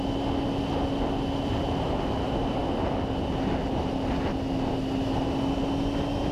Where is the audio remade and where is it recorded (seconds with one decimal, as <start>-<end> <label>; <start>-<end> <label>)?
0.0-6.3 recorded